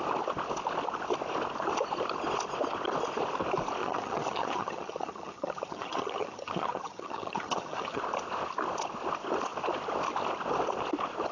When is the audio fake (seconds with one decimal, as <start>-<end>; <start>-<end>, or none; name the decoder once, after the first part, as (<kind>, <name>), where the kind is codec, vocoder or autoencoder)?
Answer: 3.8-8.0 (vocoder, HiFi-GAN)